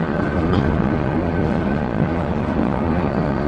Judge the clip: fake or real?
fake